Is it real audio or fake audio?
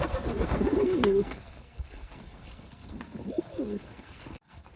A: fake